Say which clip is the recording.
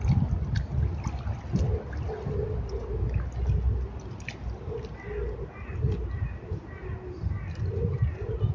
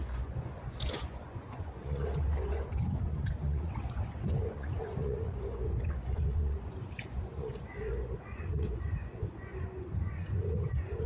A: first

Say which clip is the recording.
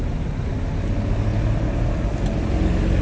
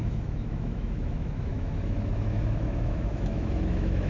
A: first